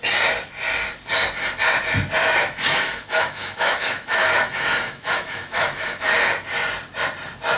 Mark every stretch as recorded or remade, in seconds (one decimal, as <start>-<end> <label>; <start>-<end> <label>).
0.0-2.2 recorded; 2.2-6.1 remade; 6.1-7.6 recorded